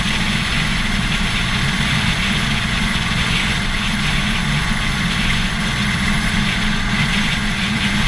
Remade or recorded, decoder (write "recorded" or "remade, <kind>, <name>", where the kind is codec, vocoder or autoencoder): remade, vocoder, Vocos